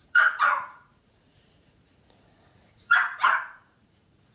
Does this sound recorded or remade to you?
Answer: remade